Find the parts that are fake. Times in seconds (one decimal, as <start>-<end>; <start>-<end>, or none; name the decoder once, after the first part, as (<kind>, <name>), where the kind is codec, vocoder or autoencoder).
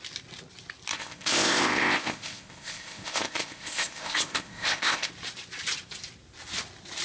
0.9-5.1 (codec, ZipCodec)